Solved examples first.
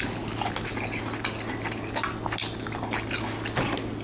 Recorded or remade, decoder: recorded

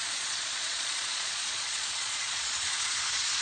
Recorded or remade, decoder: remade, vocoder, Vocos